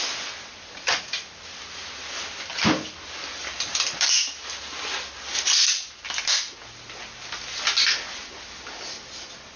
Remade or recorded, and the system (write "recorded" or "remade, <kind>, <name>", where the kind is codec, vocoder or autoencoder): recorded